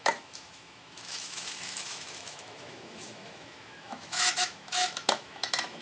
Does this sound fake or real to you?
fake